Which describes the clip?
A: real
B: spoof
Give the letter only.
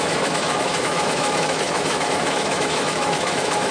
B